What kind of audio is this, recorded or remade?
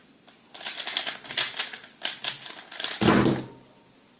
recorded